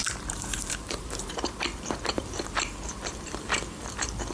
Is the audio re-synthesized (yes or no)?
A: yes